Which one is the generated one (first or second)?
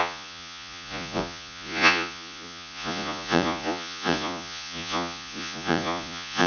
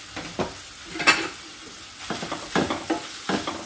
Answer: first